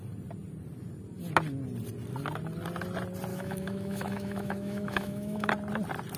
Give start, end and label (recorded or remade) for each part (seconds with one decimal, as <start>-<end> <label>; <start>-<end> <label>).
0.0-3.3 recorded; 3.3-5.5 remade; 5.5-6.2 recorded